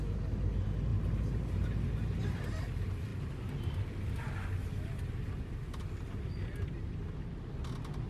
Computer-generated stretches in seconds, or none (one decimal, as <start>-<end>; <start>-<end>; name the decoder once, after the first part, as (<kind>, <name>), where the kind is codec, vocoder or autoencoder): none

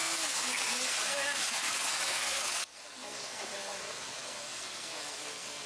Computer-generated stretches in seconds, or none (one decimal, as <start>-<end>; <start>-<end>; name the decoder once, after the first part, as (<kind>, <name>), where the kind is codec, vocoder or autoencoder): 0.0-5.7 (codec, SNAC)